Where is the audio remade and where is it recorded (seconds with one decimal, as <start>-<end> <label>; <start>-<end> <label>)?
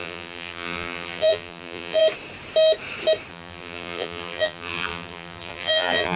0.0-2.0 remade; 2.0-3.3 recorded; 3.3-6.2 remade